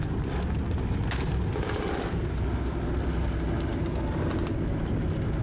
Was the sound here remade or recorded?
recorded